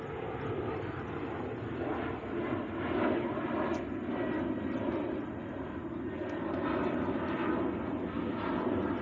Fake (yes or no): no